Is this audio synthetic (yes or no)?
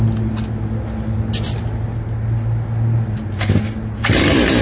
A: no